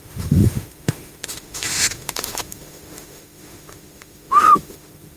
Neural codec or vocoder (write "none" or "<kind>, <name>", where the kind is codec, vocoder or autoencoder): autoencoder, DAC-VAE